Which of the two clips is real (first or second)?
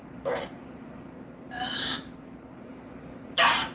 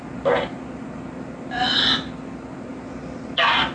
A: second